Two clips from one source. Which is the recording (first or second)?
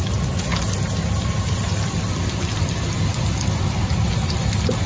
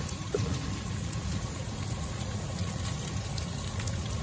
first